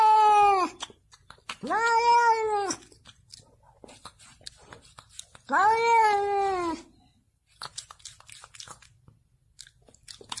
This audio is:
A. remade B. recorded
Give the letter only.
B